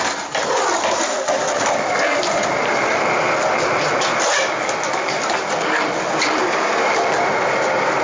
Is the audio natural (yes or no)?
yes